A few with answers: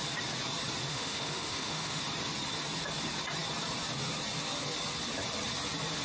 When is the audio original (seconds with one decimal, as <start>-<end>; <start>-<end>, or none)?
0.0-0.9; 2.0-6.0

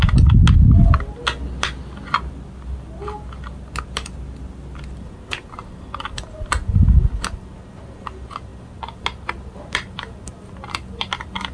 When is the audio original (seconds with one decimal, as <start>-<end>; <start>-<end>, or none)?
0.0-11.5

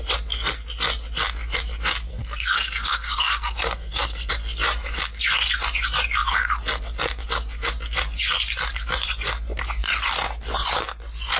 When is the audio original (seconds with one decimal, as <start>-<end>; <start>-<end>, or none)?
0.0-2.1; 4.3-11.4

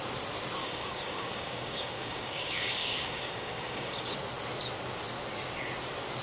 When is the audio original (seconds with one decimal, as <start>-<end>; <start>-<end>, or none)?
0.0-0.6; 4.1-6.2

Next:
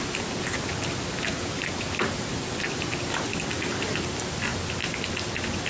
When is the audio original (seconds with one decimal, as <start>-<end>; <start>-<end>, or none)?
0.0-5.7

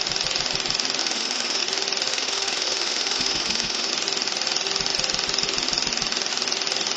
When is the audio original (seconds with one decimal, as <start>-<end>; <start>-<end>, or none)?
0.0-1.0; 1.6-2.1; 3.9-7.0